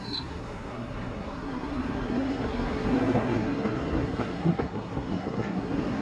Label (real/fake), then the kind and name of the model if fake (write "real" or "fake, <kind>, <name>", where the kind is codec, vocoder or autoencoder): fake, codec, SNAC